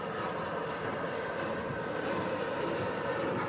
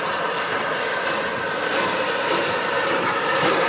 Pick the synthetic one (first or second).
second